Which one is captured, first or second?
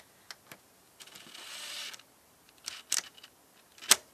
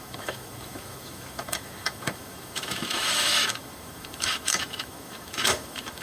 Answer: first